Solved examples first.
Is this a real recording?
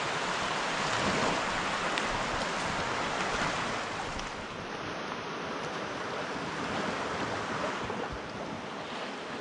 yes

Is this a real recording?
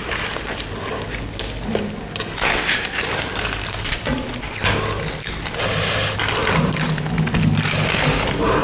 yes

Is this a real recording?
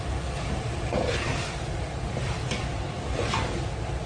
yes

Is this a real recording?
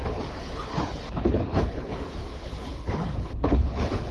no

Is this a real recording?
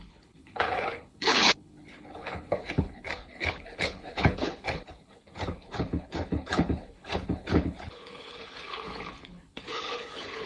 no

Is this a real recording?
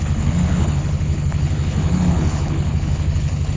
no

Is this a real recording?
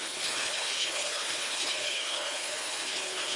no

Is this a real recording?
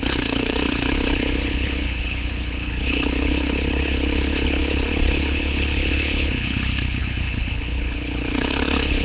no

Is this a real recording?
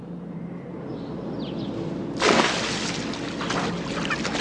yes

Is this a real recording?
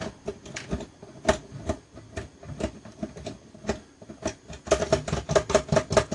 yes